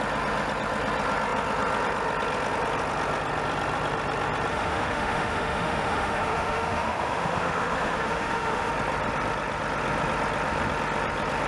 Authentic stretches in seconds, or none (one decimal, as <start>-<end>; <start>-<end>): 0.0-4.5; 8.7-11.5